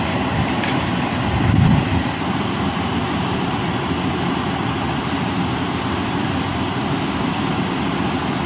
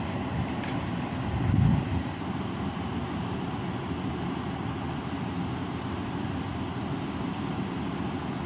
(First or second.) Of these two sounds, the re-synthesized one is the first